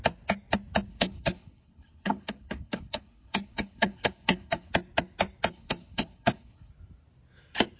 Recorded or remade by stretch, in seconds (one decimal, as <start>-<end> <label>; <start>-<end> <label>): 0.0-0.9 recorded; 0.9-4.7 remade; 4.7-5.5 recorded; 5.5-6.7 remade; 6.7-7.8 recorded